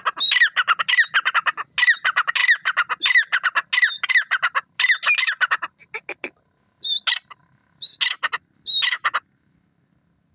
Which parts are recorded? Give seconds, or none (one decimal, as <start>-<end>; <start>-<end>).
0.0-10.3